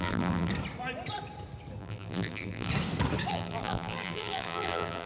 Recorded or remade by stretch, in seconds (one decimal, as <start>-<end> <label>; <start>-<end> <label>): 0.0-0.5 remade; 0.5-1.8 recorded; 1.8-2.7 remade; 2.7-3.3 recorded; 3.3-5.1 remade